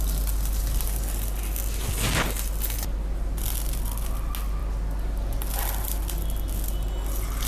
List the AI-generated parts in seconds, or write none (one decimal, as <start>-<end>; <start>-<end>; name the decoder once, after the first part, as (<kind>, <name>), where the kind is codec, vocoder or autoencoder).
none